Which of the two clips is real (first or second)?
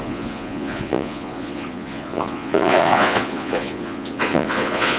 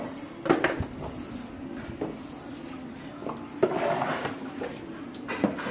second